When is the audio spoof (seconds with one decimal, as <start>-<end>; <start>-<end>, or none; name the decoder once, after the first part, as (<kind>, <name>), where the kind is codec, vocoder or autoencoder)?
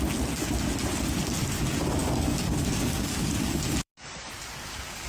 2.0-5.1 (codec, DAC)